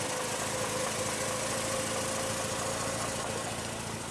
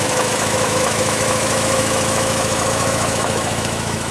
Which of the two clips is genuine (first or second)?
first